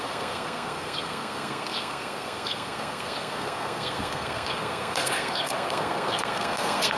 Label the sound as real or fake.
fake